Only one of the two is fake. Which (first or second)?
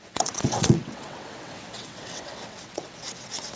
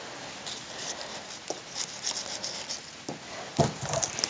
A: first